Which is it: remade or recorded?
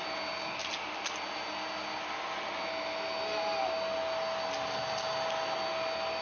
recorded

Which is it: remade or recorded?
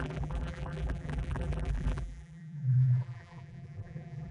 remade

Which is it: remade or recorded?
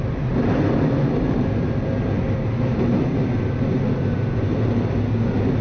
recorded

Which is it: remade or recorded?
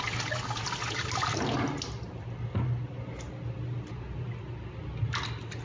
recorded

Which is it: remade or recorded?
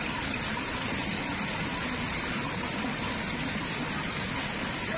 recorded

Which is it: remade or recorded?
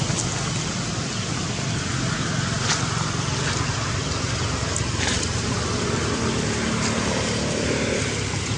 recorded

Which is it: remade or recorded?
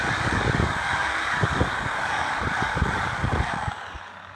remade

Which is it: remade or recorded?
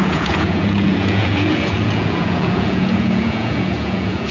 remade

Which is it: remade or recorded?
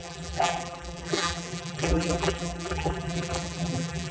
remade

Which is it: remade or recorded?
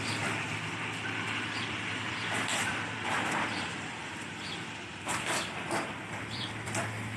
remade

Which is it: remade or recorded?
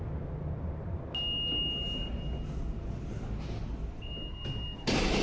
recorded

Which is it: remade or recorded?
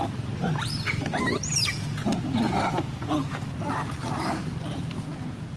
recorded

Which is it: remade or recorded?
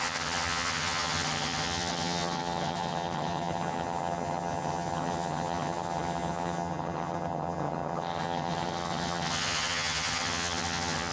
remade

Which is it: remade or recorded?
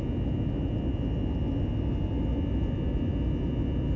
recorded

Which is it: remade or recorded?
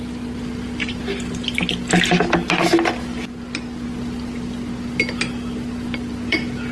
recorded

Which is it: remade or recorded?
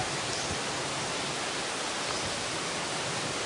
recorded